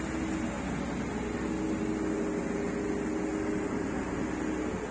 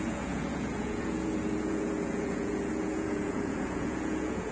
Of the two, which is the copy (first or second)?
second